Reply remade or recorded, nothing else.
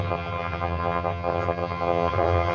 remade